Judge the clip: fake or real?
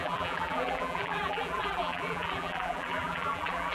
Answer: fake